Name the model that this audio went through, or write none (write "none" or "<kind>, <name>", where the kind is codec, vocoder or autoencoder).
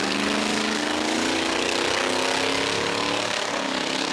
codec, DAC